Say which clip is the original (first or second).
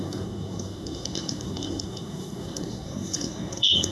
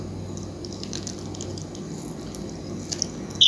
second